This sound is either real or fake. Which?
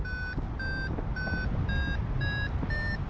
real